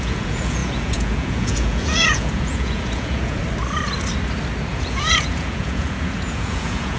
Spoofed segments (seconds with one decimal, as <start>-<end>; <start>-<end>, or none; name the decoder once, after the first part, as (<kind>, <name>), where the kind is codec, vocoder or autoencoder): 0.0-3.4 (vocoder, Vocos); 4.7-7.0